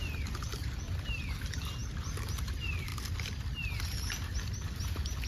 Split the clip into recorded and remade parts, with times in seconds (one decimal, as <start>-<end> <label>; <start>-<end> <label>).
0.0-1.8 remade; 1.8-2.4 recorded; 2.4-2.9 remade; 2.9-5.3 recorded